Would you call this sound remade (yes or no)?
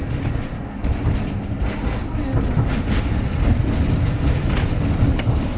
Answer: no